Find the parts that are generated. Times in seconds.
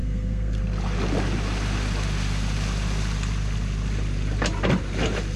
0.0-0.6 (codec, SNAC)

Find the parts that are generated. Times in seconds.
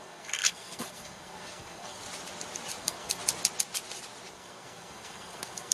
0.0-2.0 (codec, SNAC); 2.8-3.2; 4.3-5.7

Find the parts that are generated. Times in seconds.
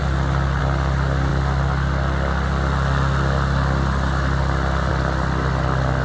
none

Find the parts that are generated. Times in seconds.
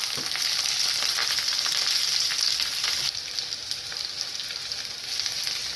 none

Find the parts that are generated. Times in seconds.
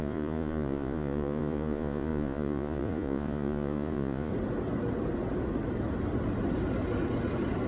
0.0-4.3 (vocoder, Vocos)